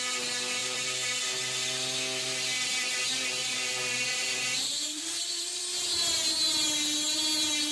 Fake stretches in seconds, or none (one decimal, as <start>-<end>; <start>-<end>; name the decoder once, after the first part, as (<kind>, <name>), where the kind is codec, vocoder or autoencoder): 0.6-1.2 (vocoder, BigVGAN v2); 3.4-5.6